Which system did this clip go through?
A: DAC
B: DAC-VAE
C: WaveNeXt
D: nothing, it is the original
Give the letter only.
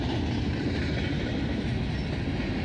D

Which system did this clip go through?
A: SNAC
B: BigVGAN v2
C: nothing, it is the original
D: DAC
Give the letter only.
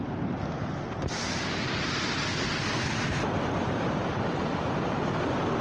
B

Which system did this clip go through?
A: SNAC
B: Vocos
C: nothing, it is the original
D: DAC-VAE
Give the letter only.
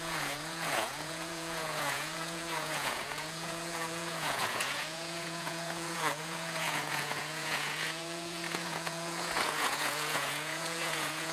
B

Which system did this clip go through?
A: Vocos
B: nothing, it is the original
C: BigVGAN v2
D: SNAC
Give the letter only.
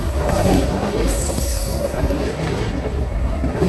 D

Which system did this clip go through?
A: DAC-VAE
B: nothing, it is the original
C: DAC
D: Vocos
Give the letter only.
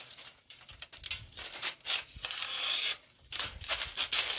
B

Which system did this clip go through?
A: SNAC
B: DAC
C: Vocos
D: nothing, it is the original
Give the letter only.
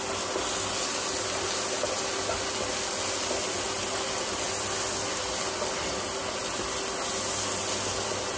D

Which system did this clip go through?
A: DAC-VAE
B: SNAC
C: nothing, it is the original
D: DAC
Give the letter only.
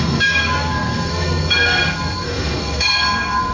B